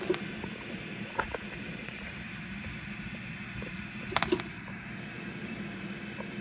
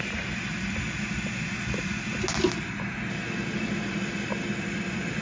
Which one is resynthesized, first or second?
first